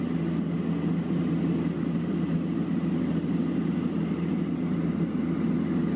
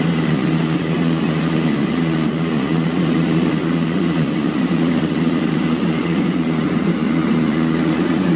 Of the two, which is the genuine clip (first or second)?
first